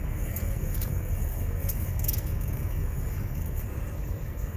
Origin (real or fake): fake